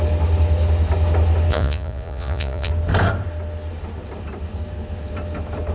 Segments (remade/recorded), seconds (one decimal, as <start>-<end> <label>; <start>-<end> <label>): 0.0-1.5 recorded; 1.5-2.7 remade; 2.7-5.7 recorded